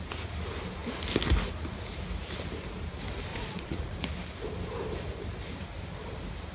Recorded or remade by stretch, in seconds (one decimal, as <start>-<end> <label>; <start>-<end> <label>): 0.0-3.3 recorded; 3.3-4.1 remade; 4.1-6.5 recorded